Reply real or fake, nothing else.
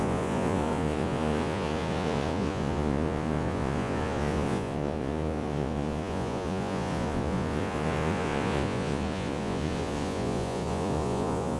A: fake